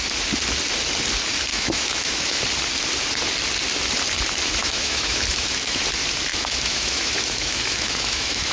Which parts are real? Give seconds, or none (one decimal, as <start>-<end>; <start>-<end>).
0.0-1.5; 2.4-4.6; 5.8-6.3